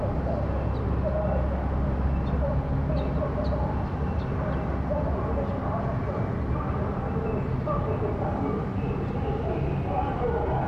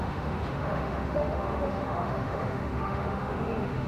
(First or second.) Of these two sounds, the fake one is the second